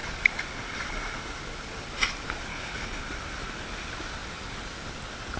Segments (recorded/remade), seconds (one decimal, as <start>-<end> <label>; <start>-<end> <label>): 0.0-2.5 recorded; 2.5-3.0 remade; 3.0-5.4 recorded